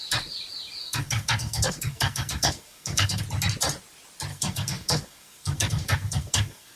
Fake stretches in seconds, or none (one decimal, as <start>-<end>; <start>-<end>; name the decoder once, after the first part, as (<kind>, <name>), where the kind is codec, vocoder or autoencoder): 0.8-3.2 (codec, SNAC); 4.3-6.8